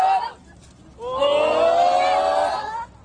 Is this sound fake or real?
real